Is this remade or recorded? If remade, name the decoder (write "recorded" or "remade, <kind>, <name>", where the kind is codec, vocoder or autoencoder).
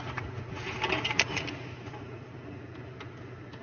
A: recorded